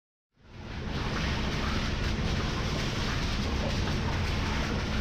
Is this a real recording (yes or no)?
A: yes